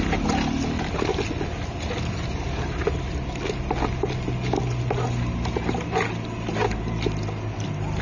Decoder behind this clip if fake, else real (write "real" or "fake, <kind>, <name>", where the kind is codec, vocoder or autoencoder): real